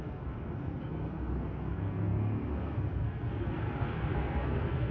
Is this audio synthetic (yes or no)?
yes